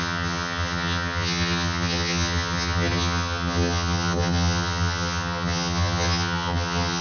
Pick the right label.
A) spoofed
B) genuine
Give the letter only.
A